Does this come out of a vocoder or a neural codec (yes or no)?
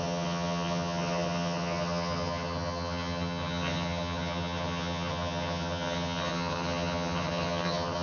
yes